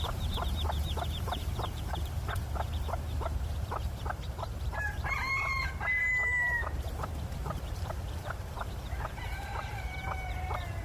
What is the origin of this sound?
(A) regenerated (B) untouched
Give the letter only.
A